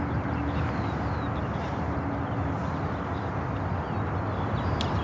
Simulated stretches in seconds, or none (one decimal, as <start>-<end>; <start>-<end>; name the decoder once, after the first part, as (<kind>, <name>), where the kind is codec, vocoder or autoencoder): none